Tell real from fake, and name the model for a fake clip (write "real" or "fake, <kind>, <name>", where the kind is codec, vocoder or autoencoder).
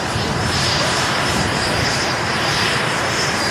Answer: fake, vocoder, BigVGAN v2